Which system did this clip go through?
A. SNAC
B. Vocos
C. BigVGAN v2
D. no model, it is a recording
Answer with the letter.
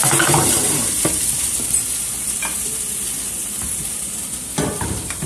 C